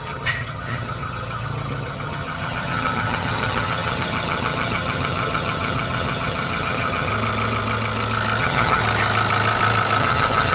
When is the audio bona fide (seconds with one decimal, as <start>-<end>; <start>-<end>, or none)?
7.1-8.4; 8.8-10.0